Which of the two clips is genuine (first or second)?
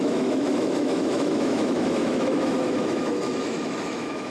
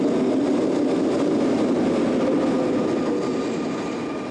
second